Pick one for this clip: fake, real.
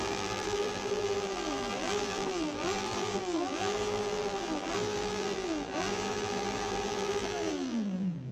fake